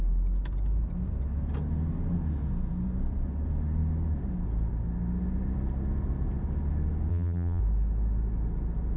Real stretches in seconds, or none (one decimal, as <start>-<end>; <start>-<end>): 0.0-7.1; 7.6-9.0